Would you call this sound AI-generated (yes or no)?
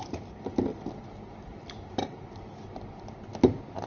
no